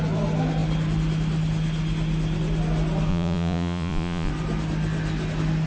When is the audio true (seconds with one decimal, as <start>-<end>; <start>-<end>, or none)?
0.0-3.1; 4.3-5.7